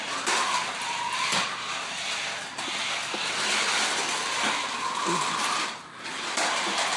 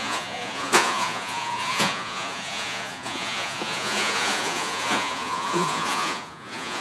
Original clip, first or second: first